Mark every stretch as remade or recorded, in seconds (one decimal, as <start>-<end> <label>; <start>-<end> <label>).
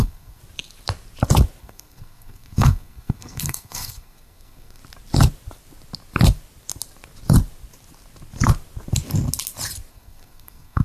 0.0-0.4 remade; 0.4-1.6 recorded; 1.6-4.8 remade; 4.8-9.9 recorded; 9.9-10.8 remade